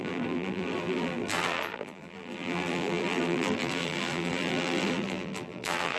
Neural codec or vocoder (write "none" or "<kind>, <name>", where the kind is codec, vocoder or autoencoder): vocoder, BigVGAN v2